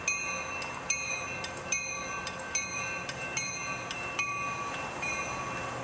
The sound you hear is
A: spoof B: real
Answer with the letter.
B